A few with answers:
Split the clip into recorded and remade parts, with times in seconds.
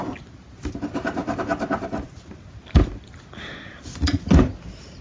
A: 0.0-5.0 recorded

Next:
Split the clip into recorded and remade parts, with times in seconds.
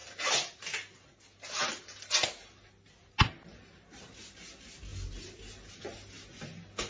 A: 0.0-6.9 recorded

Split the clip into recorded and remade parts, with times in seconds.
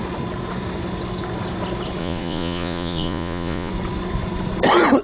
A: 0.0-2.0 recorded; 2.0-3.7 remade; 3.7-5.0 recorded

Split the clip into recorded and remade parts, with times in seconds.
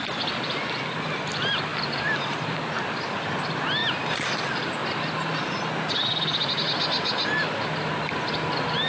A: 0.0-8.9 recorded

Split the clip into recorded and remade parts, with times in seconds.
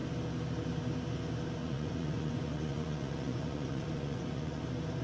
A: 0.0-1.6 recorded; 1.6-4.6 remade; 4.6-5.0 recorded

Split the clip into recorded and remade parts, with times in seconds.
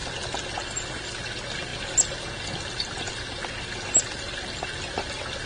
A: 0.0-5.5 recorded